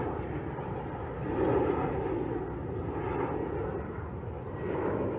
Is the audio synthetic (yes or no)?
no